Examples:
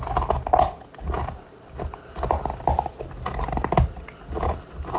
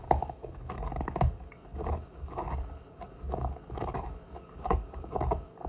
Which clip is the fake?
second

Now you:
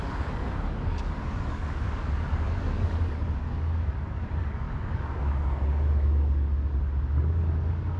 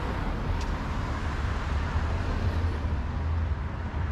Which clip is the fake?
first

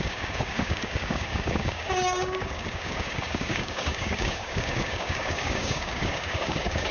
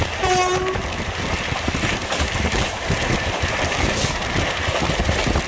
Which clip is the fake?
first